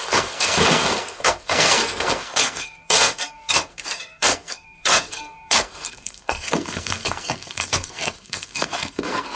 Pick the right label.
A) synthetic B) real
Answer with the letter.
A